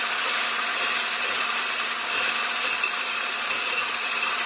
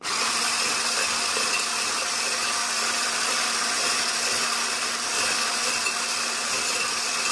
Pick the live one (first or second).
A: second